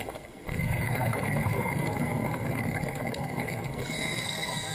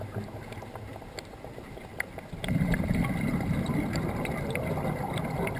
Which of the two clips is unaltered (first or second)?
second